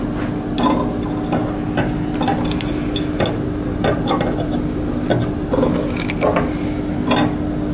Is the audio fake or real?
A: real